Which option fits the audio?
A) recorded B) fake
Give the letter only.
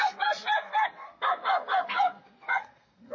B